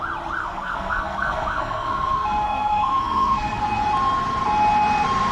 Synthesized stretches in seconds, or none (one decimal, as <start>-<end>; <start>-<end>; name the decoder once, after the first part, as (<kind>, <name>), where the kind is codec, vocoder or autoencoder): 0.4-3.6 (codec, SNAC)